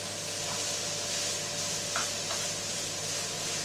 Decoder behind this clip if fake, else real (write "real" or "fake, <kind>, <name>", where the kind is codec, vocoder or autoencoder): real